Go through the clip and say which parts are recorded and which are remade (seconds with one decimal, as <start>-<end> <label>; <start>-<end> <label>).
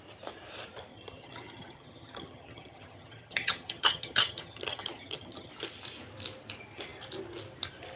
0.0-0.9 recorded; 0.9-5.5 remade; 5.5-8.0 recorded